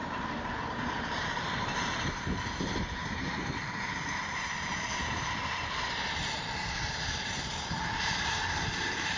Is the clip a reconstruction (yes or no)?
yes